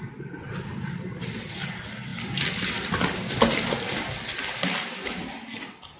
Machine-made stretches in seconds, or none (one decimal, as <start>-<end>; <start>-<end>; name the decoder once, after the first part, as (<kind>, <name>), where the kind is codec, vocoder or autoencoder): none